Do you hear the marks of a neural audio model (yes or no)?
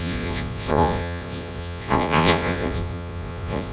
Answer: yes